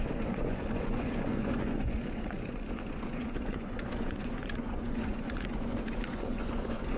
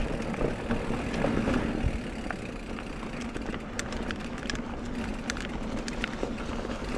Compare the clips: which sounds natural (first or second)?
second